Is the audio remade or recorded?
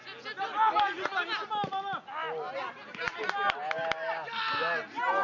recorded